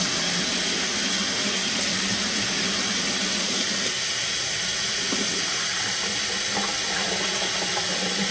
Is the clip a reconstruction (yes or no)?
no